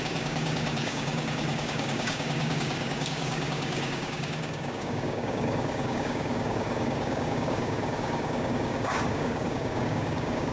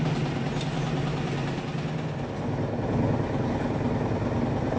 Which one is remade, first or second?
first